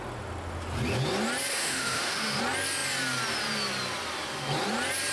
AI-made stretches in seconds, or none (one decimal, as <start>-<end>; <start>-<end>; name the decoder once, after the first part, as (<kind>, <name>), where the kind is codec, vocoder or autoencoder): 1.5-2.4 (autoencoder, DAC-VAE)